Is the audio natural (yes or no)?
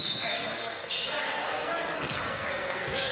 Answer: no